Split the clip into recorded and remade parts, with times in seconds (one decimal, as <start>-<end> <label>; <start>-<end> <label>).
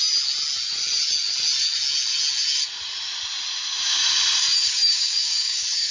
0.0-4.6 recorded; 4.6-5.9 remade